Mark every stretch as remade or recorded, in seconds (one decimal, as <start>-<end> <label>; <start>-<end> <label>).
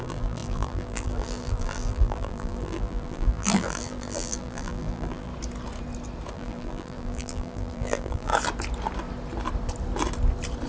0.0-5.3 remade; 5.3-6.3 recorded; 6.3-8.3 remade; 8.3-10.7 recorded